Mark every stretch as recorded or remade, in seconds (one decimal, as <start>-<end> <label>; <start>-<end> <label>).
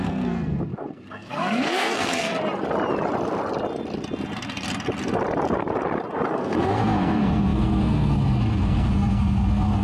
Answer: 0.0-2.3 remade; 2.3-6.3 recorded; 6.3-9.8 remade